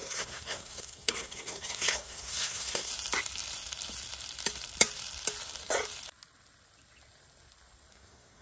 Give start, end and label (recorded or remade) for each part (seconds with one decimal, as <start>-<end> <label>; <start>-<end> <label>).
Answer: 0.0-2.9 remade; 2.9-7.9 recorded; 7.9-8.4 remade